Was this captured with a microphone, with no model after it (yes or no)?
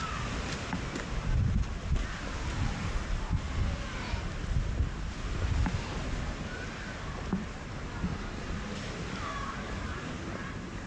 yes